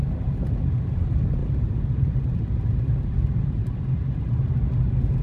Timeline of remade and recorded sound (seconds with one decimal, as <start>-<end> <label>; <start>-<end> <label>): 0.0-1.4 recorded; 1.4-4.5 remade; 4.5-5.2 recorded